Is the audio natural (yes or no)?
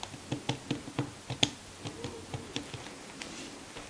yes